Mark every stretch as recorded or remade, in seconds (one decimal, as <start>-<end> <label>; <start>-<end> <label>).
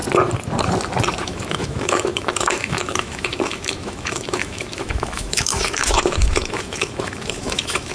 0.0-1.2 recorded; 1.2-7.9 remade